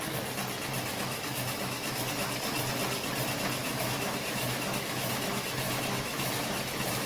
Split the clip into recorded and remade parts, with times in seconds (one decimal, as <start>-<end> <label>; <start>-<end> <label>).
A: 0.0-0.9 recorded; 0.9-2.1 remade; 2.1-3.6 recorded; 3.6-7.1 remade